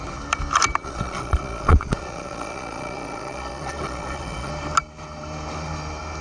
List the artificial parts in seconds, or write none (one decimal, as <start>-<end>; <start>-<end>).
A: 0.8-4.5